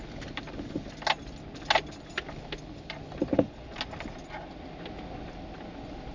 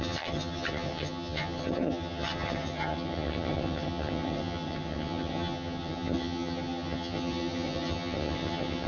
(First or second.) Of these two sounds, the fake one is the second